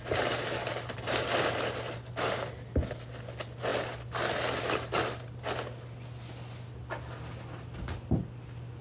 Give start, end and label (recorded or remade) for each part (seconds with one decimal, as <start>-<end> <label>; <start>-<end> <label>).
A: 0.0-8.8 recorded

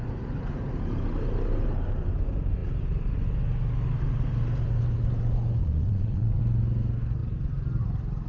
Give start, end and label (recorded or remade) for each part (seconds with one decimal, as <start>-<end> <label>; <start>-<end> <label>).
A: 0.0-5.6 recorded; 5.6-6.4 remade; 6.4-8.3 recorded

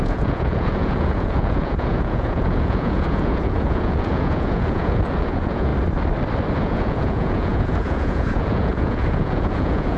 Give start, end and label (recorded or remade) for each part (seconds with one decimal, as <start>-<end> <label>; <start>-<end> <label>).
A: 0.0-5.7 remade; 5.7-6.6 recorded; 6.6-10.0 remade

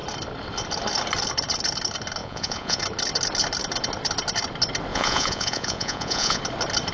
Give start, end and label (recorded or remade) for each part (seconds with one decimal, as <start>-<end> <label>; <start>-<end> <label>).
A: 0.0-2.2 recorded; 2.2-2.8 remade; 2.8-4.9 recorded; 4.9-6.4 remade; 6.4-6.9 recorded

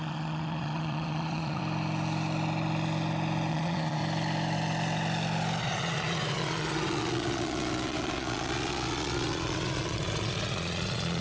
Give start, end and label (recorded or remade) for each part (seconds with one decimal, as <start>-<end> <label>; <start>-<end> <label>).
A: 0.0-1.6 remade; 1.6-3.5 recorded; 3.5-4.0 remade; 4.0-5.6 recorded; 5.6-11.2 remade

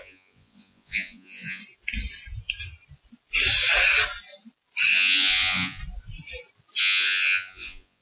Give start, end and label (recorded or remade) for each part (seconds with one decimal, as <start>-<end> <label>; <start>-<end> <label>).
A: 0.0-1.6 remade; 1.6-4.9 recorded; 4.9-5.8 remade; 5.8-6.8 recorded; 6.8-8.0 remade